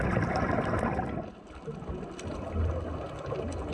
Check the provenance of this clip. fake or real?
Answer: real